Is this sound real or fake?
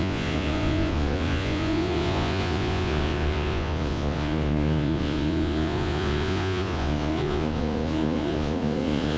fake